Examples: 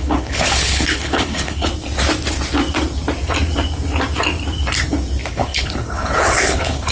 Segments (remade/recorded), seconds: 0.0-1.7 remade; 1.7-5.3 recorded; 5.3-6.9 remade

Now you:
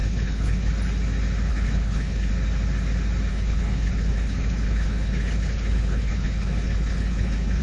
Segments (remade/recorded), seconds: 0.0-0.7 remade; 0.7-1.5 recorded; 1.5-2.3 remade; 2.3-3.3 recorded; 3.3-7.6 remade

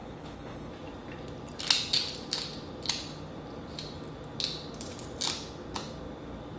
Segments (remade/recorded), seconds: 0.0-0.7 remade; 0.7-6.6 recorded

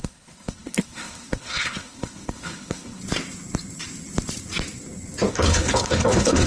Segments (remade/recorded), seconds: 0.0-3.0 remade; 3.0-5.3 recorded; 5.3-6.5 remade

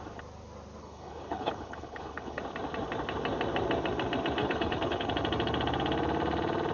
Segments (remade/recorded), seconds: 0.0-0.8 recorded; 0.8-2.4 remade; 2.4-4.4 recorded; 4.4-5.1 remade; 5.1-6.7 recorded